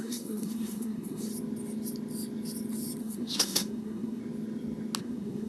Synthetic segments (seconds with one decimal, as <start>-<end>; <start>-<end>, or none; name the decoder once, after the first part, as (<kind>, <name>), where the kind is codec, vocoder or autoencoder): 0.0-1.3 (codec, SNAC); 3.0-4.2; 5.0-5.5